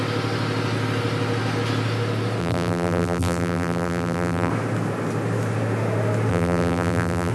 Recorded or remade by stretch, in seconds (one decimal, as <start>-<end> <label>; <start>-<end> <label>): 0.0-2.4 recorded; 2.4-4.5 remade; 4.5-6.3 recorded; 6.3-7.3 remade